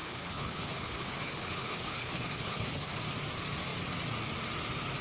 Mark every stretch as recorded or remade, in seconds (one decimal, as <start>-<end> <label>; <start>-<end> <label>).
0.0-3.0 remade; 3.0-5.0 recorded